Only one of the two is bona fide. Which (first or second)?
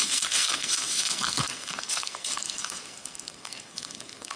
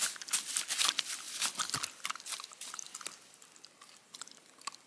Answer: second